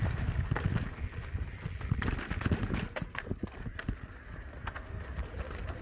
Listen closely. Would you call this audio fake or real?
real